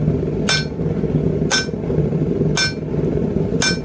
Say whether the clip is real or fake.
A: real